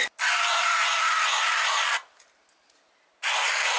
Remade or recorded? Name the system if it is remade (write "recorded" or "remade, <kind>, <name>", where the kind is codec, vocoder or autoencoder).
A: recorded